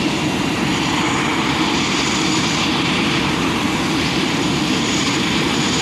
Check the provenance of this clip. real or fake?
fake